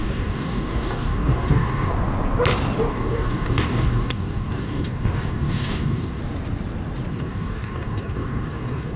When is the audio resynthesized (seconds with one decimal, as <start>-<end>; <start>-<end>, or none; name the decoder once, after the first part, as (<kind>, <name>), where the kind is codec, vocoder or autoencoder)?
0.0-1.9 (codec, DAC); 2.9-6.2; 7.1-9.0